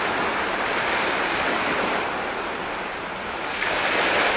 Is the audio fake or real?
real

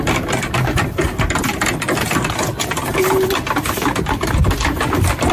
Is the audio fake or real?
real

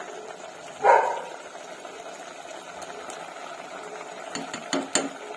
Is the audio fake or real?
real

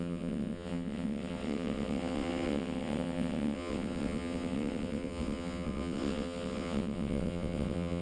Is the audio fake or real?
fake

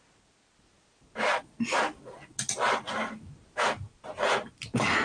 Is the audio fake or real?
real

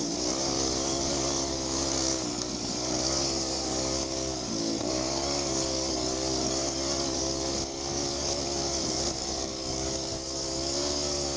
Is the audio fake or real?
fake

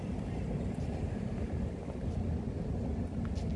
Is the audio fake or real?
real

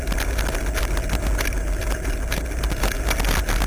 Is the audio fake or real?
real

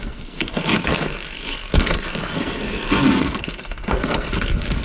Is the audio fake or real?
fake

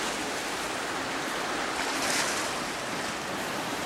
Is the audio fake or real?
real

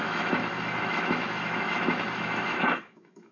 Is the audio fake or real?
fake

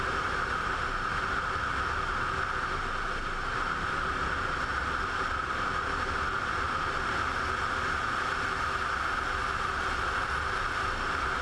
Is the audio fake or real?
real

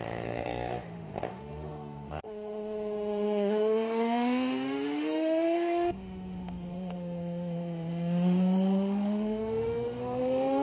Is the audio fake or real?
fake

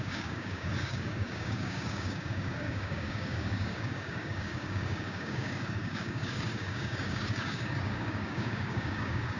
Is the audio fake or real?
fake